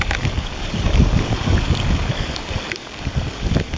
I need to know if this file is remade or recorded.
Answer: remade